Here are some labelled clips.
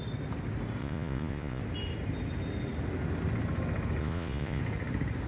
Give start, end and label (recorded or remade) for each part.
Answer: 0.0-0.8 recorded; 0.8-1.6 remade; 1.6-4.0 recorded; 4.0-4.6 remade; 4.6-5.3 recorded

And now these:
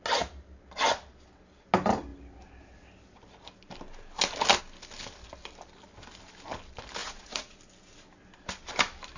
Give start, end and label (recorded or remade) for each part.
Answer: 0.0-7.0 recorded; 7.0-7.6 remade; 7.6-9.2 recorded

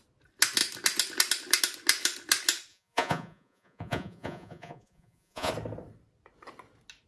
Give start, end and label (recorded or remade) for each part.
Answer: 0.0-2.7 recorded; 2.7-5.5 remade; 5.5-7.1 recorded

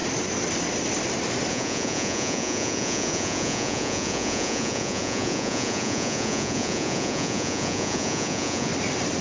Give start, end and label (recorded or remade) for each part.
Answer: 0.0-1.5 recorded; 1.5-8.7 remade; 8.7-9.2 recorded

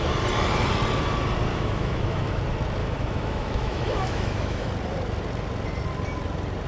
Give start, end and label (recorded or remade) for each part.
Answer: 0.0-1.5 recorded; 1.5-2.4 remade; 2.4-2.8 recorded; 2.8-4.7 remade; 4.7-6.7 recorded

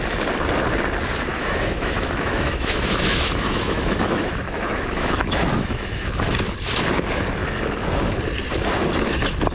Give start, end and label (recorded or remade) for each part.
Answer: 0.0-1.3 recorded; 1.3-6.1 remade; 6.1-9.5 recorded